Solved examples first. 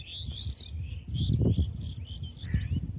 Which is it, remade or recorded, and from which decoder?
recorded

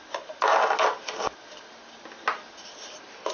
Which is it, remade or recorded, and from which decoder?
recorded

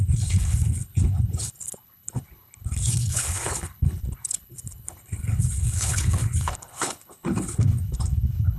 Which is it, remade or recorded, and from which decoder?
remade, codec, HILCodec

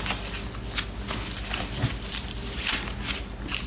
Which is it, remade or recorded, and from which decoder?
recorded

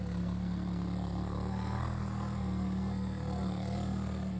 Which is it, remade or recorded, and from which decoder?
remade, codec, SNAC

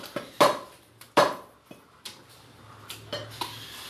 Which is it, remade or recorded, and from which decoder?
recorded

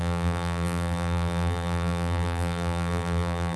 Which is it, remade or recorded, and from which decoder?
remade, vocoder, BigVGAN v2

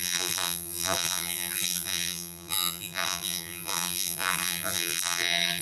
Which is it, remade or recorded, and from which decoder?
remade, vocoder, BigVGAN v2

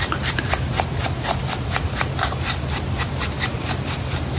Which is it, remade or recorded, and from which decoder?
recorded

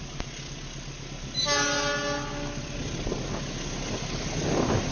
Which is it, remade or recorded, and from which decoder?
recorded